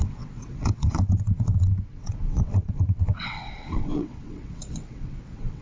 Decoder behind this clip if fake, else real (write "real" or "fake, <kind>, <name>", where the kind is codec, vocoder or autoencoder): fake, vocoder, WaveNeXt